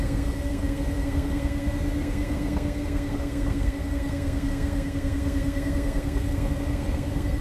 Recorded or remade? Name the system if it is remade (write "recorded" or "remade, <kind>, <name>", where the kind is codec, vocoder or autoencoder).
remade, codec, SNAC